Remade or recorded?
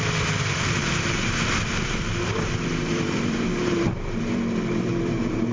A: remade